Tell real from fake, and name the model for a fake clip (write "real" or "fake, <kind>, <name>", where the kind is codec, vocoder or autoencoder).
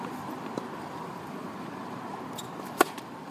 fake, vocoder, BigVGAN v2